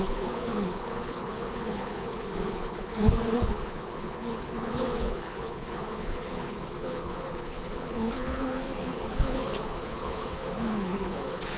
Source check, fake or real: fake